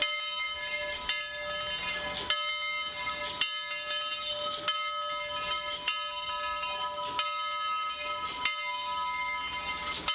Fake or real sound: real